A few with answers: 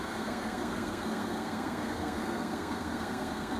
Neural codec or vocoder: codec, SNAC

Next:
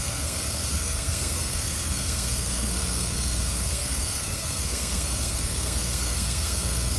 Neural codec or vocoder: codec, SNAC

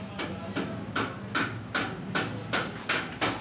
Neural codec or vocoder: none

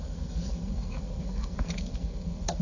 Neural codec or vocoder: codec, SNAC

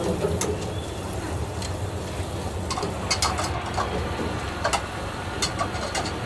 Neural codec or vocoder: none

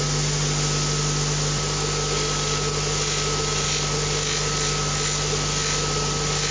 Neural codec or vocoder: none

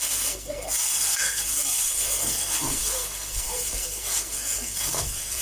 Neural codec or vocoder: codec, SNAC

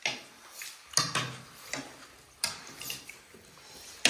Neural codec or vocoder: none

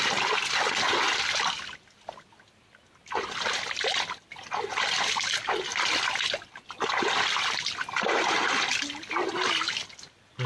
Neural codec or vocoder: none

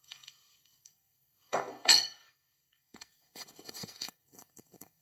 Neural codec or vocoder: codec, SNAC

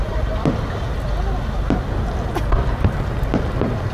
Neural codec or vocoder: none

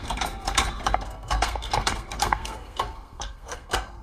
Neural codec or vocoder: codec, SNAC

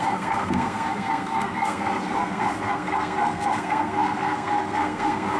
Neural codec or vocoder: codec, SNAC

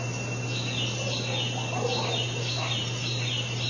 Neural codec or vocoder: none